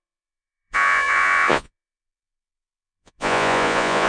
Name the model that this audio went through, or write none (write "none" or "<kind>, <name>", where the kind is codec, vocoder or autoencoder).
vocoder, Vocos